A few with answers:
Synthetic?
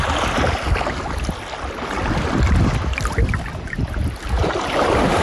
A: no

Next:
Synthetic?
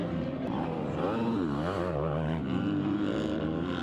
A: no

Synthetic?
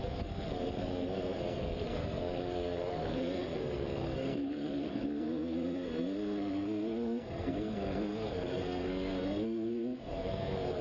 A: yes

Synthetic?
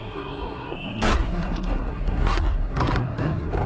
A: yes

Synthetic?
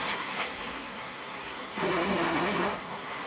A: yes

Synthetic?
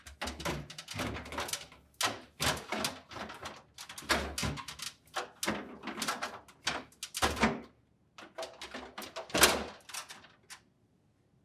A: no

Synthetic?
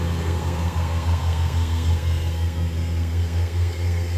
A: yes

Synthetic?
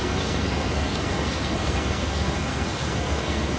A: yes